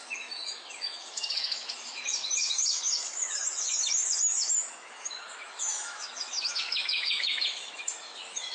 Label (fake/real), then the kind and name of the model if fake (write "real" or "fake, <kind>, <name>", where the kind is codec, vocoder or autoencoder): fake, autoencoder, DAC-VAE